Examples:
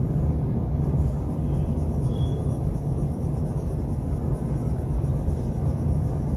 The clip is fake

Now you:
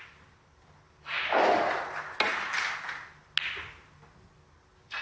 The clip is real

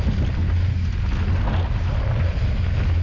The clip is real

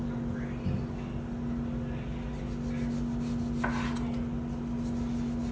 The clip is real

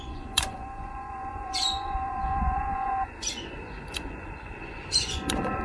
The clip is fake